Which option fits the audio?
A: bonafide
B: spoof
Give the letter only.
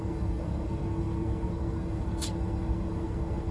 B